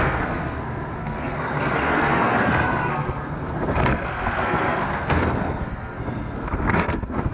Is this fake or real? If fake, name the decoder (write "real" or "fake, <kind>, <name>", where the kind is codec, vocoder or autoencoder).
fake, codec, SNAC